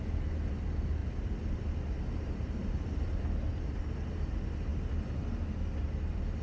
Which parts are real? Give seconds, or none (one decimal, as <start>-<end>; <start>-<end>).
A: 0.0-1.0; 1.7-2.6; 3.2-6.4

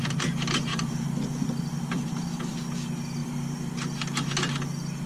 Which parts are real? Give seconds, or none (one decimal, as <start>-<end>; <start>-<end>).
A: 0.0-0.7; 1.6-3.2; 3.7-5.1